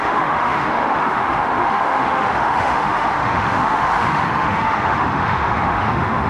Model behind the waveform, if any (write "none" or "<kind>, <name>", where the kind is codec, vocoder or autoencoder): autoencoder, DAC-VAE